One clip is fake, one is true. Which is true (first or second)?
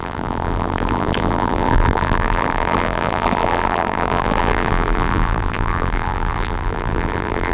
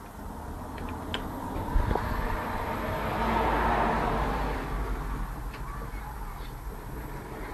second